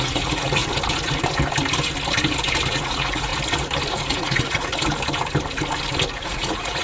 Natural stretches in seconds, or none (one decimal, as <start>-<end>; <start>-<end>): 0.6-2.7; 3.3-3.9; 4.7-6.1